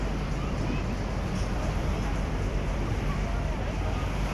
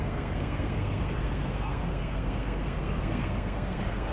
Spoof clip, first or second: second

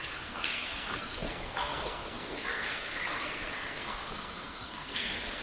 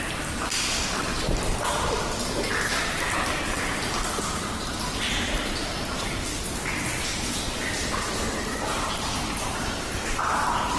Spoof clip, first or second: first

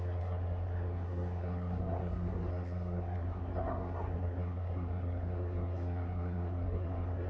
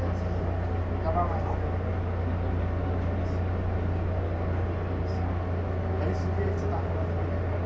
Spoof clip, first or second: first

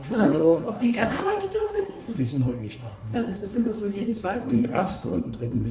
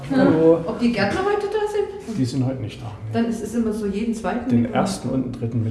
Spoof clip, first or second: first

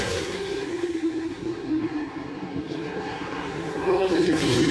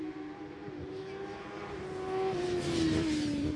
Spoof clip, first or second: first